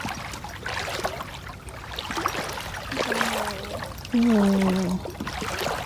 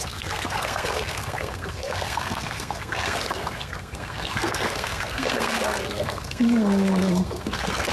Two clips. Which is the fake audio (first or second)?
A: second